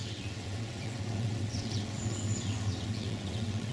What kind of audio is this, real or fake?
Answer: fake